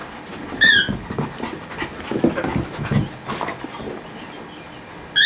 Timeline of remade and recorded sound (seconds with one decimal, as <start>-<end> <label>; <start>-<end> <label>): 0.0-5.3 recorded